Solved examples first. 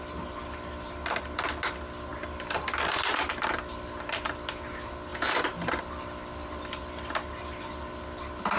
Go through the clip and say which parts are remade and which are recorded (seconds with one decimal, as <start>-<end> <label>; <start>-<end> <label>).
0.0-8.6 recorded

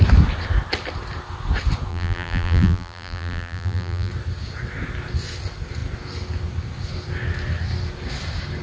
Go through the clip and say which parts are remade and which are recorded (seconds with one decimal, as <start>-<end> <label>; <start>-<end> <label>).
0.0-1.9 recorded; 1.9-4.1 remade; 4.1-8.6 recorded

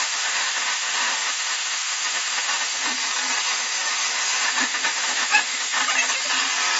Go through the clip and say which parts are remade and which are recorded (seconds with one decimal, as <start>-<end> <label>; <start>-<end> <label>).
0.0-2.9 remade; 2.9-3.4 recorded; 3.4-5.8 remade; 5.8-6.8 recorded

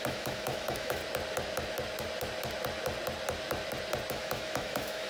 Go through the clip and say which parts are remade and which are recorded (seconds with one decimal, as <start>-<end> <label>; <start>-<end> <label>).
0.0-1.0 remade; 1.0-4.1 recorded; 4.1-5.1 remade